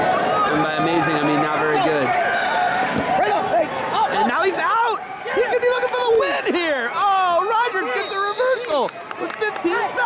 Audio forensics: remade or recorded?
recorded